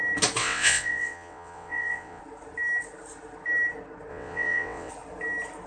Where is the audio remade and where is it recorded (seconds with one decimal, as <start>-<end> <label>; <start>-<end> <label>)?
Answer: 0.0-0.4 recorded; 0.4-2.2 remade; 2.2-4.1 recorded; 4.1-4.9 remade; 4.9-5.7 recorded